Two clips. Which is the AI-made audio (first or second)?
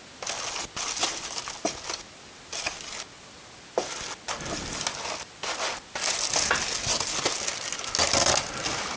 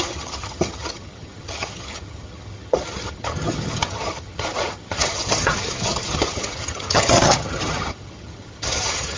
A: second